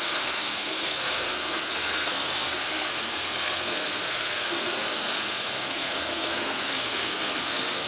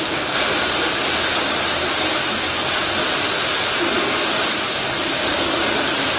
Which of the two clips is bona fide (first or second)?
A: second